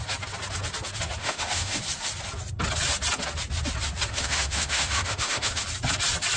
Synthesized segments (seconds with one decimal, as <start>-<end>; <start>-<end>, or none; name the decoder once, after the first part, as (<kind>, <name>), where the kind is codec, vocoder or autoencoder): 1.2-1.8 (autoencoder, DAC-VAE); 4.1-5.6